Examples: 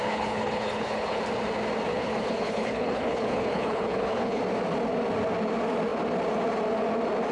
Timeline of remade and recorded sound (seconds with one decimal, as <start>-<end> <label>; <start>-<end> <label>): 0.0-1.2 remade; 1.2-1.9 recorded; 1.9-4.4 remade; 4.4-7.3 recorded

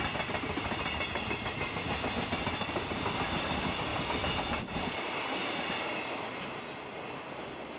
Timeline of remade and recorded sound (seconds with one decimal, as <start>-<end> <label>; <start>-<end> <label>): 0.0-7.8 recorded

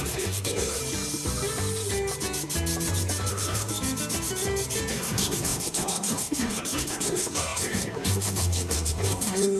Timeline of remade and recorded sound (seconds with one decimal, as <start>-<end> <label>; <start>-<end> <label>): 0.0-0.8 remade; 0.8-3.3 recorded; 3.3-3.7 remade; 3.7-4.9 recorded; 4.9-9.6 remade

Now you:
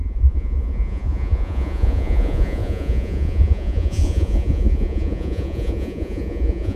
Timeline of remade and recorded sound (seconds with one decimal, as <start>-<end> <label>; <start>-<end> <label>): 0.0-6.8 remade

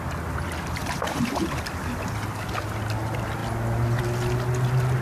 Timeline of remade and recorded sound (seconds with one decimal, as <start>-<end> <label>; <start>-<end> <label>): 0.0-0.8 recorded; 0.8-1.7 remade; 1.7-5.0 recorded